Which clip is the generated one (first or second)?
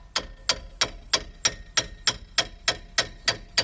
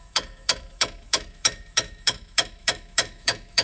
second